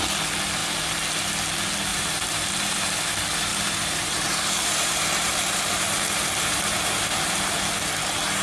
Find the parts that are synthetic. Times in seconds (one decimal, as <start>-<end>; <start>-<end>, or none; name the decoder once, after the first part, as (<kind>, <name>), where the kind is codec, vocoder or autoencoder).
1.9-2.9 (vocoder, BigVGAN v2); 3.5-7.6